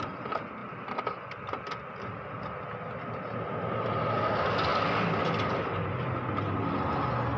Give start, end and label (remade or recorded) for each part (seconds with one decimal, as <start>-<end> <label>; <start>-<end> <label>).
0.0-7.4 recorded